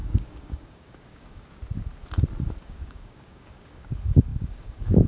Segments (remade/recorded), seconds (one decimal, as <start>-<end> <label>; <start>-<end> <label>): 0.0-1.6 remade; 1.6-2.6 recorded; 2.6-5.1 remade